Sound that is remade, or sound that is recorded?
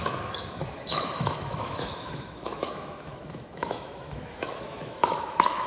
remade